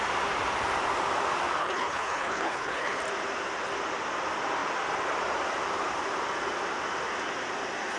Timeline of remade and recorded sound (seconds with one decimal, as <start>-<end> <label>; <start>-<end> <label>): 0.0-1.6 recorded; 1.6-3.0 remade; 3.0-8.0 recorded